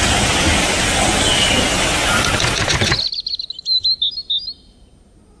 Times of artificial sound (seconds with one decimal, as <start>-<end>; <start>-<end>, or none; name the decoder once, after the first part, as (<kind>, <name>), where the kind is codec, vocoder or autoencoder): none